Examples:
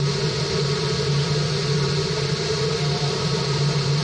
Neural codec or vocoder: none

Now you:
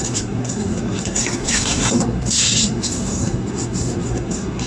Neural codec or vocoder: codec, SNAC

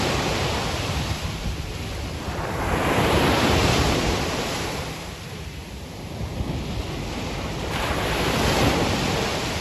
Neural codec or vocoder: none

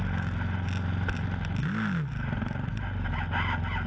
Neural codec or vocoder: none